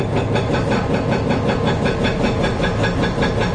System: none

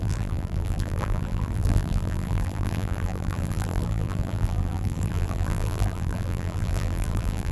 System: vocoder, BigVGAN v2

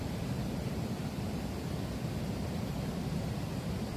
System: vocoder, BigVGAN v2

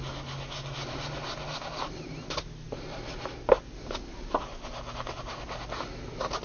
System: none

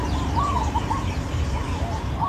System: none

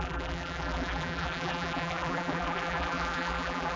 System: vocoder, BigVGAN v2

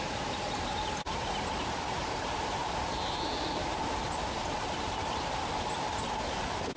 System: none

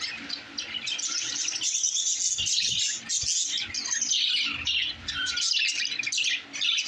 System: none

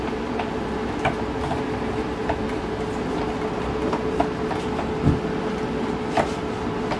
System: none